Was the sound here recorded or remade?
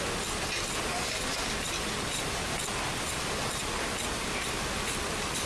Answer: recorded